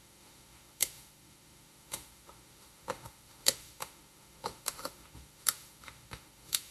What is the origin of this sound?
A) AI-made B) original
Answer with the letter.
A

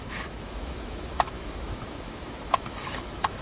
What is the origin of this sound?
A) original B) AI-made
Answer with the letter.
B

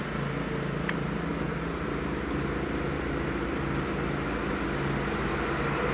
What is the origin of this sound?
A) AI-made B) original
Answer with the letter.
B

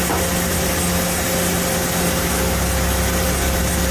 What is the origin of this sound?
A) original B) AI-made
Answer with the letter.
A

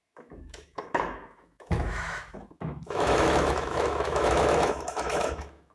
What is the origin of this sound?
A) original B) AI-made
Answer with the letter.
B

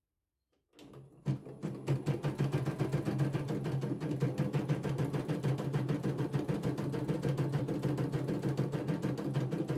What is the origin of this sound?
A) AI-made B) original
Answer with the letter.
B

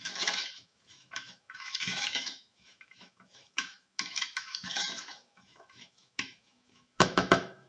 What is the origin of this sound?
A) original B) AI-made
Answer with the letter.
B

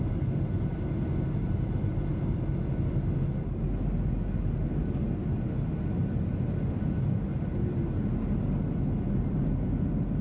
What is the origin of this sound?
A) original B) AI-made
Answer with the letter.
A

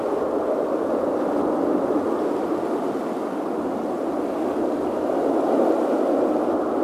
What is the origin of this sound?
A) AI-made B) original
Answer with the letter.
B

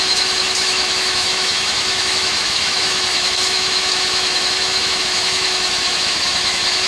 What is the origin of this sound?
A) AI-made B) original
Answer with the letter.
A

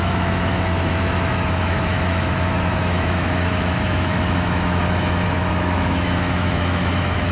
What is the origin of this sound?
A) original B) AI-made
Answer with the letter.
B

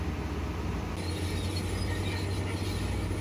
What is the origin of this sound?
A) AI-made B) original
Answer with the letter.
B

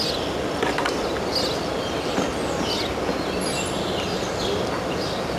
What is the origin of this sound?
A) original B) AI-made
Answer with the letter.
A